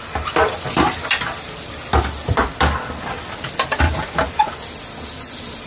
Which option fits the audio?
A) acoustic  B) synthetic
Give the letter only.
A